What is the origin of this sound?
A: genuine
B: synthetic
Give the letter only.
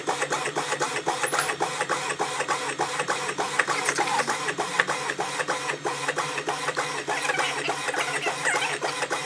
A